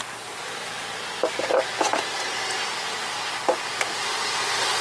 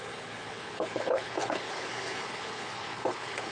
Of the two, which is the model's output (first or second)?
second